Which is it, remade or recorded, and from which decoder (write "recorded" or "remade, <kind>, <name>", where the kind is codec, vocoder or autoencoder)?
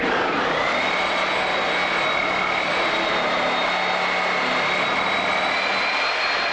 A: recorded